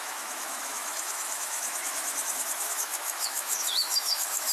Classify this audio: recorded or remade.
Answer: remade